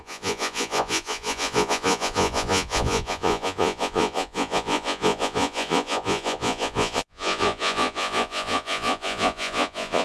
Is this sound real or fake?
fake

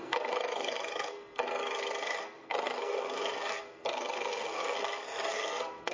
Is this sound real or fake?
fake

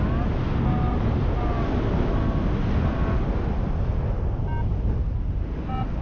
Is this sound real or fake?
real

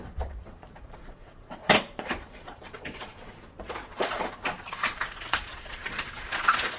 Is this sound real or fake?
fake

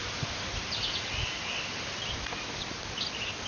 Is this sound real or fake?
real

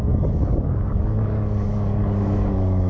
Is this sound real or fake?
fake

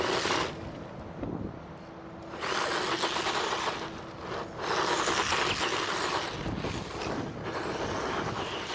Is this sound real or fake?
real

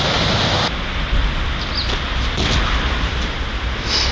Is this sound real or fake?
real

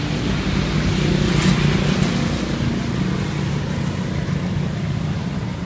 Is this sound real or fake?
real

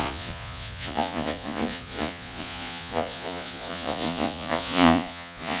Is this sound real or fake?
fake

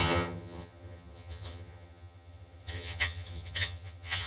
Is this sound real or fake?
fake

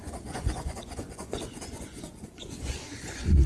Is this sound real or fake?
fake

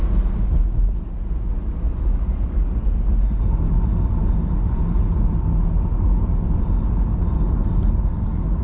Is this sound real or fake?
real